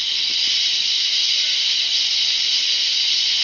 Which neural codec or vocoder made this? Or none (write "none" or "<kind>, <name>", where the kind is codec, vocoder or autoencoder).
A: none